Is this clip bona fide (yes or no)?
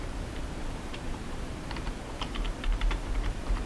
no